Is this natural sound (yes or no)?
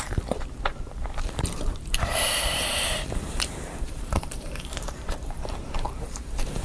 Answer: no